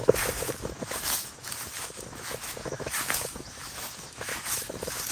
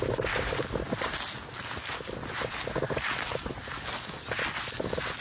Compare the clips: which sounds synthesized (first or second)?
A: first